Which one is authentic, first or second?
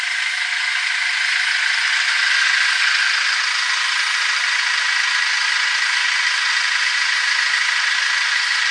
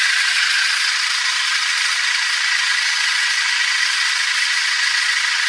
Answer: first